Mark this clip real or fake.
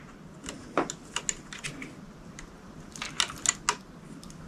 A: real